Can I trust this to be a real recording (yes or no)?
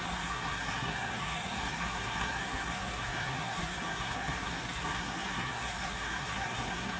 no